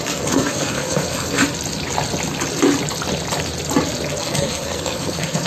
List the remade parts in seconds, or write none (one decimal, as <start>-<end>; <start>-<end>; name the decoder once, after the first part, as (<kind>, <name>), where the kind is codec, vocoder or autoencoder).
0.0-1.4 (codec, SNAC); 4.2-5.5

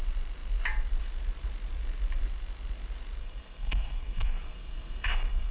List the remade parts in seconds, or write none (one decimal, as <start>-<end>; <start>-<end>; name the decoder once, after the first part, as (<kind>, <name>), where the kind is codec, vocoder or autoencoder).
3.2-5.5 (codec, SNAC)

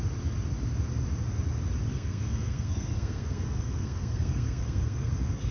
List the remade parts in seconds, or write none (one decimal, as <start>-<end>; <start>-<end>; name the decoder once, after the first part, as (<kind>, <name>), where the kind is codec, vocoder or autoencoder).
1.9-5.5 (codec, SNAC)

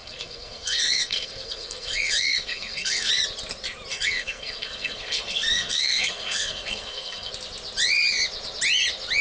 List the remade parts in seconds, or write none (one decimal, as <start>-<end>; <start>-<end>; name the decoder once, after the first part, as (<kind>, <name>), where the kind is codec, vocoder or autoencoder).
0.0-3.1 (codec, SNAC); 3.9-7.3